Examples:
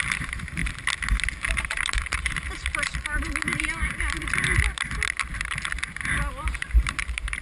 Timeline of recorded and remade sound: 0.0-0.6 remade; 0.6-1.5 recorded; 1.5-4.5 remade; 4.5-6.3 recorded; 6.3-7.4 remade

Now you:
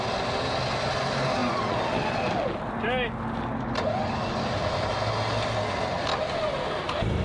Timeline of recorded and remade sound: 0.0-7.2 recorded

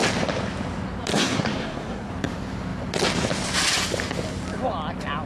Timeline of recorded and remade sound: 0.0-1.1 recorded; 1.1-2.1 remade; 2.1-5.3 recorded

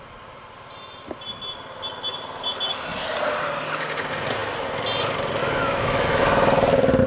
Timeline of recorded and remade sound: 0.0-5.4 recorded; 5.4-6.2 remade; 6.2-7.1 recorded

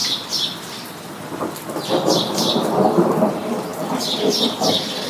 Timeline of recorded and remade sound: 0.0-3.7 remade; 3.7-4.3 recorded; 4.3-5.1 remade

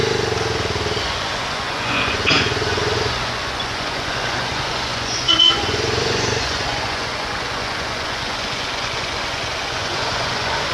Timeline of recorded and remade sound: 0.0-1.0 recorded; 1.0-10.7 remade

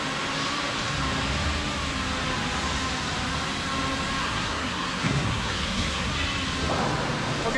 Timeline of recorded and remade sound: 0.0-4.2 recorded; 4.2-6.1 remade; 6.1-7.6 recorded

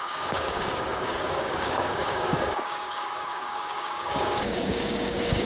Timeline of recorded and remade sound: 0.0-5.5 remade